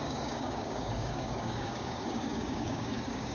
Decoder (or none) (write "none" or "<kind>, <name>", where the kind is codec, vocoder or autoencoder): codec, DAC